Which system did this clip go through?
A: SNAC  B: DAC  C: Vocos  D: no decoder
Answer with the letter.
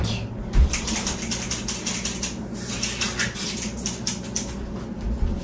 D